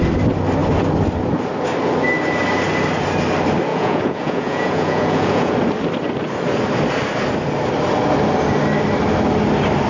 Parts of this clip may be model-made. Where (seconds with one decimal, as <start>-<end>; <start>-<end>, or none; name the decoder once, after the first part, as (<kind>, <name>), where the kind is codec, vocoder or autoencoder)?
3.7-5.5 (vocoder, Vocos)